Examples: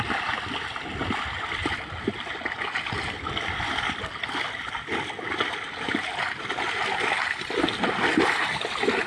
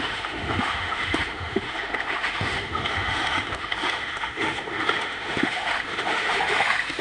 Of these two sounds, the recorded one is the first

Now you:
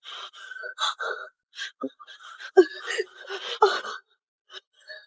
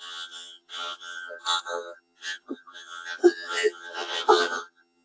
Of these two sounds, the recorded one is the first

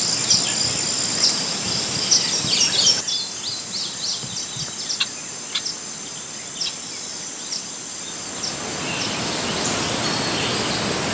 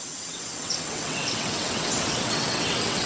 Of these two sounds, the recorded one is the first